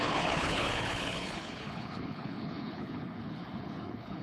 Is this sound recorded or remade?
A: remade